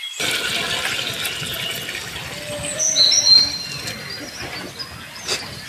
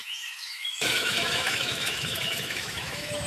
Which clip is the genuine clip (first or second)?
first